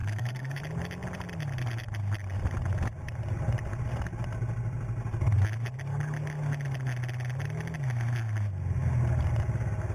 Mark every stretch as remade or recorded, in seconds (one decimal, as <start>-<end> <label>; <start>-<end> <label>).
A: 0.0-0.6 remade; 0.6-9.9 recorded